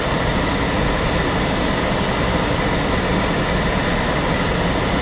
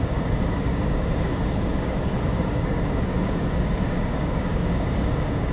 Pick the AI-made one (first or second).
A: second